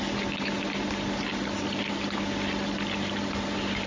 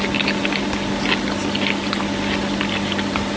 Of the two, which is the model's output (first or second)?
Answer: first